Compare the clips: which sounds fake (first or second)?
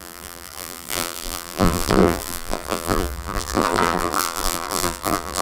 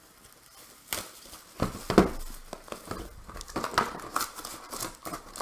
first